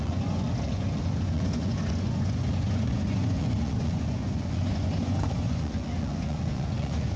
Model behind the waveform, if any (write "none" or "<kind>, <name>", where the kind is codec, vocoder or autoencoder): vocoder, Vocos